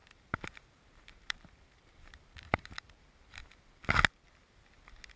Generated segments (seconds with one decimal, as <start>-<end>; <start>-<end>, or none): 0.0-3.1